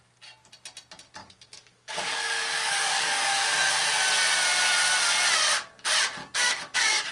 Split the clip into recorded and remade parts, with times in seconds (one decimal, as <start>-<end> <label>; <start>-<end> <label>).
0.0-1.2 recorded; 1.2-3.7 remade; 3.7-6.2 recorded; 6.2-7.1 remade